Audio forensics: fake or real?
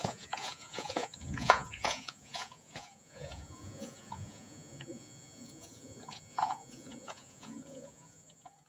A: fake